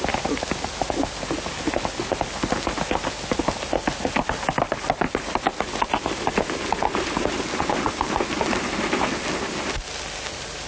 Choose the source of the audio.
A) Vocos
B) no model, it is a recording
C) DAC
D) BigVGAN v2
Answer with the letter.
B